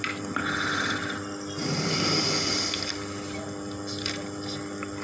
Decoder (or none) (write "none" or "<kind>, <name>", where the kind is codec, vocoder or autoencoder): none